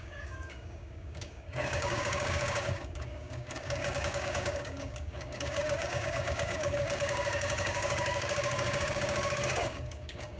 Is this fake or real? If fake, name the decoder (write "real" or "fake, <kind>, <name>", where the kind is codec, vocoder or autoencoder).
fake, codec, DAC